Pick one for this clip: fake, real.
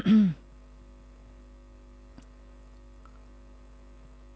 real